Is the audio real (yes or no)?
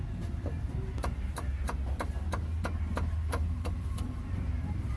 yes